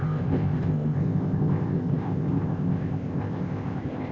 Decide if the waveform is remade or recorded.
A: remade